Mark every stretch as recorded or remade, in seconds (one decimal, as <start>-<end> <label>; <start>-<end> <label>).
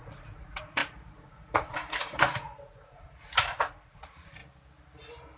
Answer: 0.0-4.4 remade; 4.4-5.4 recorded